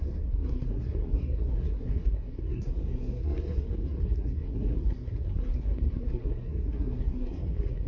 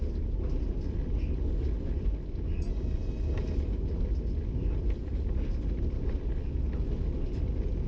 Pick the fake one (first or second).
first